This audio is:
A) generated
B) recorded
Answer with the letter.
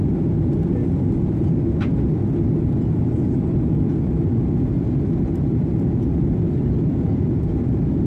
B